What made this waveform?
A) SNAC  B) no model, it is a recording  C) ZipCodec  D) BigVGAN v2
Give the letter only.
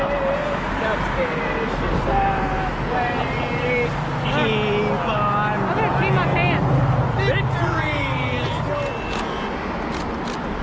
B